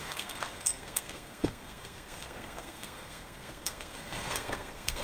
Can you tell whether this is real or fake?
fake